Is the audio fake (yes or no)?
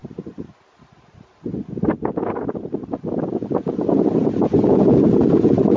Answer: no